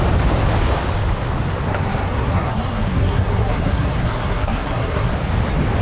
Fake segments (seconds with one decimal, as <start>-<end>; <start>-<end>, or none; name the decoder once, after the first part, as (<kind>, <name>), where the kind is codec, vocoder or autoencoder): 1.7-5.1 (codec, SNAC)